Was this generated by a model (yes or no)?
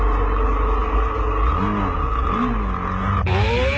no